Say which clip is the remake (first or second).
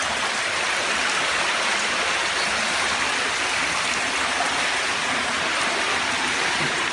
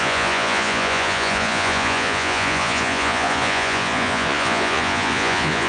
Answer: second